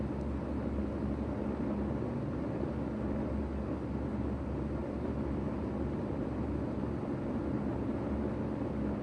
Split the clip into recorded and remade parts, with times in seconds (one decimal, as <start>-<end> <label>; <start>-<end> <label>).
0.0-4.8 recorded; 4.8-6.1 remade; 6.1-9.0 recorded